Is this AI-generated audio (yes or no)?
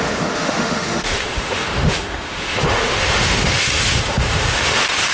yes